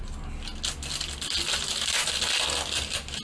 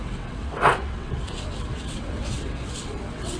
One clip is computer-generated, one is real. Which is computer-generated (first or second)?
second